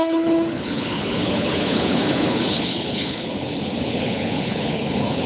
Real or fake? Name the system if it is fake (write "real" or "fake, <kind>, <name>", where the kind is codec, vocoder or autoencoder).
fake, codec, HILCodec